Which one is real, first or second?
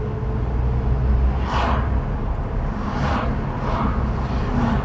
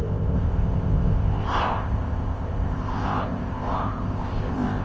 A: first